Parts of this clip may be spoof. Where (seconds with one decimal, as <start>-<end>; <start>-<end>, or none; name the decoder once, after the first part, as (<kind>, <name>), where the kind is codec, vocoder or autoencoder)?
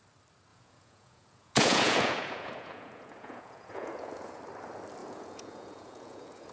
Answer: 0.5-4.4 (vocoder, Vocos); 5.0-6.5